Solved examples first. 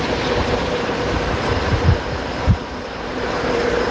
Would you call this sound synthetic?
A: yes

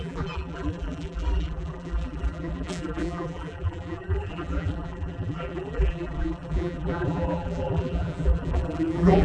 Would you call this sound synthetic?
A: yes